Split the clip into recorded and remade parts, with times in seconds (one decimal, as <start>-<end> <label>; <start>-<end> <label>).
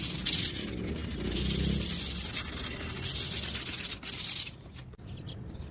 0.0-5.7 recorded